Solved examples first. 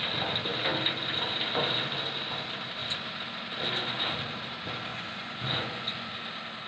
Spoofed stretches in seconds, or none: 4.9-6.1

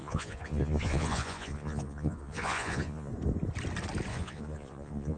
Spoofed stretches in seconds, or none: 0.0-3.1; 4.1-5.2

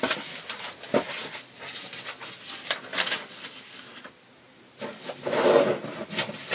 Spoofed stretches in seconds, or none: none

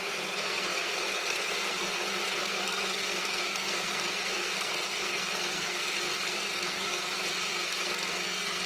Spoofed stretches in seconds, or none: 0.0-8.7